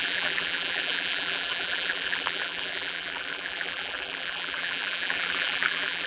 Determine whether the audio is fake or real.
fake